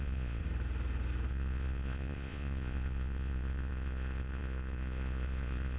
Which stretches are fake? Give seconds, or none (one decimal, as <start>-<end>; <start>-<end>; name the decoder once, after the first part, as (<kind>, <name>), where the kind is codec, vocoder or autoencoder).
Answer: 0.0-0.4 (vocoder, Vocos); 1.3-5.8